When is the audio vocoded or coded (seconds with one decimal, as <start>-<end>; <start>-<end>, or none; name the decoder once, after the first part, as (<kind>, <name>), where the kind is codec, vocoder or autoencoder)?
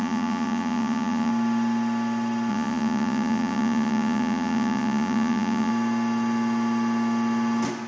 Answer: 0.0-1.3 (vocoder, Vocos); 2.5-5.7